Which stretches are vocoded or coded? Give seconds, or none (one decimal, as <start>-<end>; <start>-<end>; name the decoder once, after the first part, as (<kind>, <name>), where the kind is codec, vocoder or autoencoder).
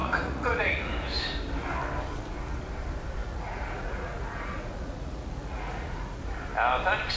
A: 0.0-0.9 (vocoder, Vocos); 3.2-6.2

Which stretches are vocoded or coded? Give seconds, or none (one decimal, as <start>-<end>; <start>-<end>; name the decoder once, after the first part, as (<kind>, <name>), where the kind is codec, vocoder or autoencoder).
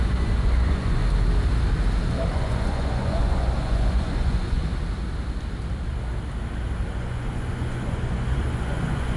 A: 0.0-1.0 (vocoder, Vocos); 2.3-4.6; 6.9-9.2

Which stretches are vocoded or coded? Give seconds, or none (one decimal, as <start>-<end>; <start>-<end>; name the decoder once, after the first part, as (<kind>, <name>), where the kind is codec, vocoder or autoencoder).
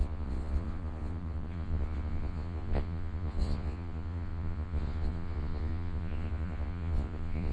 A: 0.0-7.5 (vocoder, Vocos)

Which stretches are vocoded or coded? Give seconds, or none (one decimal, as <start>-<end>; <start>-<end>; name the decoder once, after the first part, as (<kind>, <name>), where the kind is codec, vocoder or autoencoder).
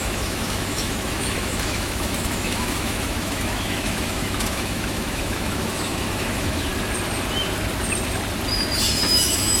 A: 0.0-6.7 (autoencoder, DAC-VAE); 9.0-9.6